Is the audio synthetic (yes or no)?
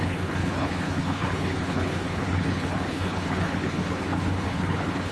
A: yes